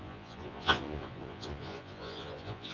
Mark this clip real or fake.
fake